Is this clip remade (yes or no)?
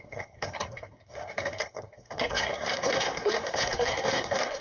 yes